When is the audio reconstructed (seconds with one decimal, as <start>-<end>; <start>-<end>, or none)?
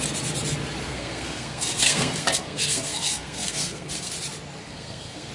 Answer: 0.9-4.1; 4.6-5.3